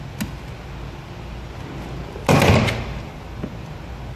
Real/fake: real